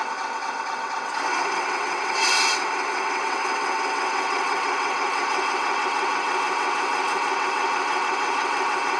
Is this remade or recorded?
remade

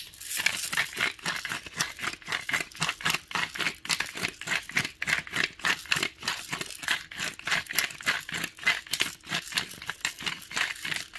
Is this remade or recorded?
recorded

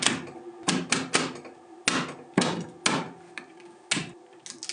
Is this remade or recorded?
recorded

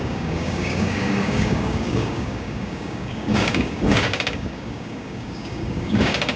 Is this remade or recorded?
remade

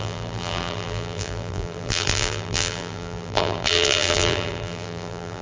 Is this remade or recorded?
remade